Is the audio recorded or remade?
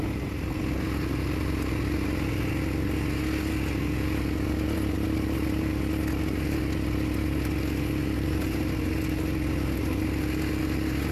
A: recorded